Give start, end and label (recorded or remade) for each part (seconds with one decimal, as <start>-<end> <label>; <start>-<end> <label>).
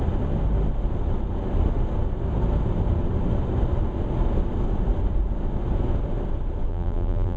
0.0-6.7 recorded; 6.7-7.4 remade